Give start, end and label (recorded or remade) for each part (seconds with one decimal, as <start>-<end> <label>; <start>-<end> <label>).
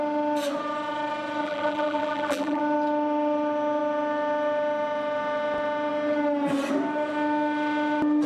0.0-1.4 recorded; 1.4-2.6 remade; 2.6-8.3 recorded